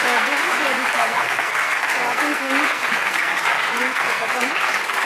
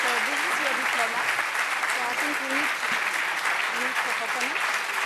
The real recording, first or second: second